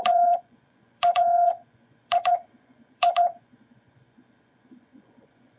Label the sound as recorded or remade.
remade